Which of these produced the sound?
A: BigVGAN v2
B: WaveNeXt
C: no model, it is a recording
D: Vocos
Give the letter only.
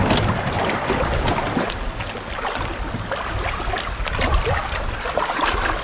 C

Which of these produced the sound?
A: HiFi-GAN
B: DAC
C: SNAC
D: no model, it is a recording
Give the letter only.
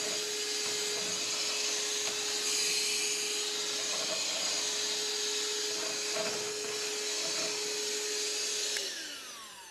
D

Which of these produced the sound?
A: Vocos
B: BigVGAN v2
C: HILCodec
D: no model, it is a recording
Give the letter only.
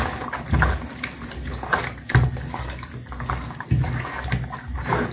D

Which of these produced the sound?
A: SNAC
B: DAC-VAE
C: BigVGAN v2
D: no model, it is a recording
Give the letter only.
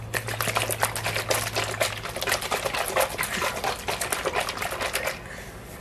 D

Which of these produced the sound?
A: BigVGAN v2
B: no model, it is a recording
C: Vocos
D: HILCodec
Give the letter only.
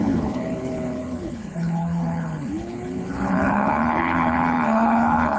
D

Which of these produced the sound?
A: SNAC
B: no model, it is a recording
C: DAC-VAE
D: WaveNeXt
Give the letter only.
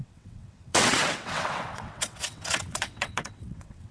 D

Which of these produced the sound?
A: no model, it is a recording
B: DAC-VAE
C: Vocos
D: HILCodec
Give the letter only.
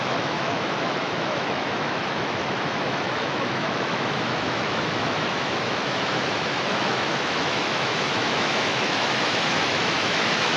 B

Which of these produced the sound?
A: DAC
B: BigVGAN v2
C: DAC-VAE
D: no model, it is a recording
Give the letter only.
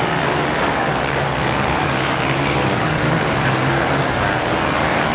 A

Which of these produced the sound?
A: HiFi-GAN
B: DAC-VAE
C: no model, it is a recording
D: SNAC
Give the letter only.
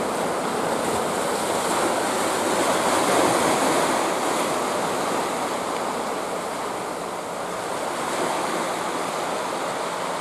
C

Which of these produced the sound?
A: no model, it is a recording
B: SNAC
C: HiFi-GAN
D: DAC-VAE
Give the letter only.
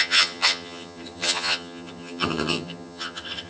C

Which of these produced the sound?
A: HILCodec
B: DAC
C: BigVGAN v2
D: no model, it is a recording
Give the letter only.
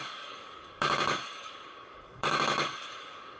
B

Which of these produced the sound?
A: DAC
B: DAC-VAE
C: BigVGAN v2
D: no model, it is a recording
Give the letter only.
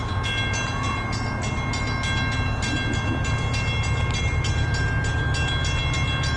D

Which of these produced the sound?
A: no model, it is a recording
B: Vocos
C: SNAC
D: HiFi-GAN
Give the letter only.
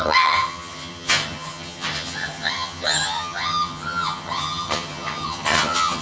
D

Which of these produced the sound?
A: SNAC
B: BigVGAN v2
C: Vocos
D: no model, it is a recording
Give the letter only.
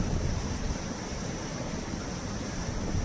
B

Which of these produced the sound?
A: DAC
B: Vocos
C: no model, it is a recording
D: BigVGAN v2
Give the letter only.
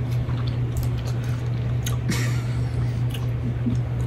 C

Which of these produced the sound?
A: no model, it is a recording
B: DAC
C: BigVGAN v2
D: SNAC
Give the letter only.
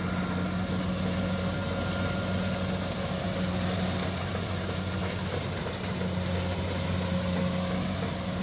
A